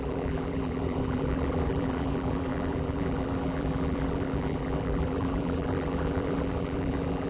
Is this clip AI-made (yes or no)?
yes